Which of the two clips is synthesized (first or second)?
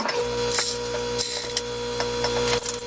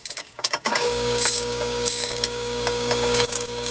second